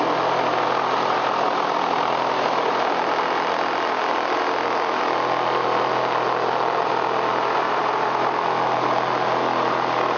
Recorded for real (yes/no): yes